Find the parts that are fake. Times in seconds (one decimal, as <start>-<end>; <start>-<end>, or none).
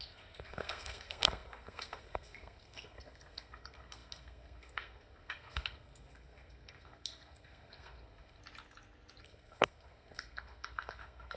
0.0-8.4; 9.2-11.4